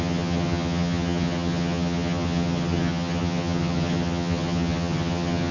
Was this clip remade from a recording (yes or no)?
yes